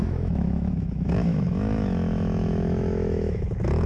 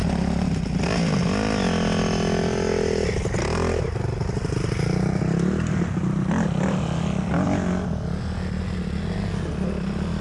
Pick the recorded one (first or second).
second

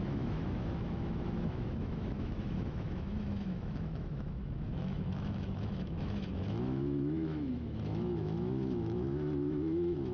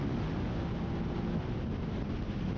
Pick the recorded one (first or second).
second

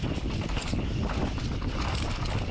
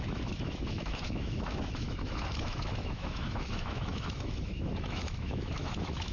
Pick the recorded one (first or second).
first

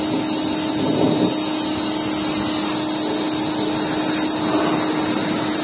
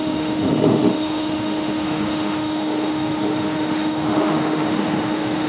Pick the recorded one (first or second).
first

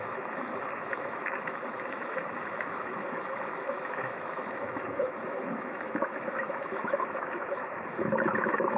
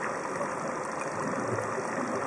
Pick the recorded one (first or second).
second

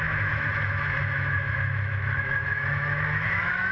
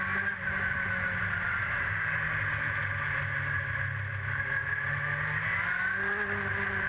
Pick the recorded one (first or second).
second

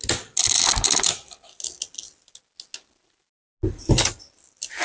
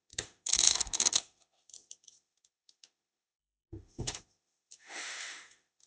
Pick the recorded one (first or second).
first